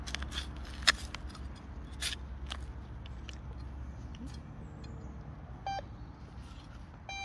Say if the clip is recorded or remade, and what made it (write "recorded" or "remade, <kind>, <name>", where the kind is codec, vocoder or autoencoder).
recorded